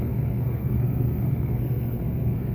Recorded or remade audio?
remade